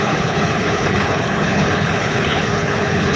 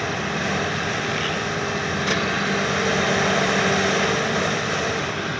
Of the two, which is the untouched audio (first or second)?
second